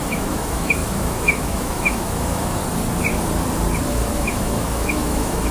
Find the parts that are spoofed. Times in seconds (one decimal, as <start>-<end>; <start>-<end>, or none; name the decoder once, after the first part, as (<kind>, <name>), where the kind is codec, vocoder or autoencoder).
0.0-2.6 (autoencoder, DAC-VAE); 3.9-5.5